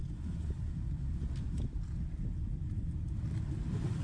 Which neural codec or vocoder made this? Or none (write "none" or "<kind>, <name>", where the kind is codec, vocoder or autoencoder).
none